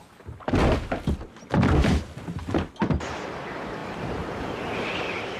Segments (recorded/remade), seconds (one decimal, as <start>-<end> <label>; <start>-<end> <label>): 0.0-2.4 recorded; 2.4-3.3 remade; 3.3-3.8 recorded; 3.8-5.4 remade